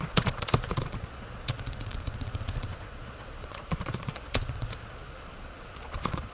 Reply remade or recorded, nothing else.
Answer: remade